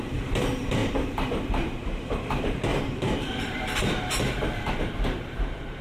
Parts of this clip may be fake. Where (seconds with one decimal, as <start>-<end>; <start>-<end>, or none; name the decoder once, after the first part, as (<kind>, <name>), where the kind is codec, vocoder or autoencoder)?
0.0-5.8 (vocoder, BigVGAN v2)